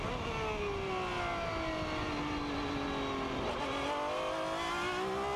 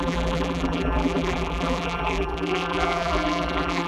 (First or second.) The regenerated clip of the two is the second